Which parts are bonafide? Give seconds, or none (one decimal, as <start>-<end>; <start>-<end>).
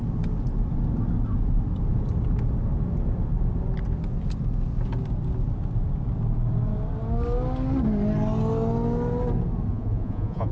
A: 0.0-9.7